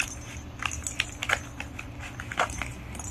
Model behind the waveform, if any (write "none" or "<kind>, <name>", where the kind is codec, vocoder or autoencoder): none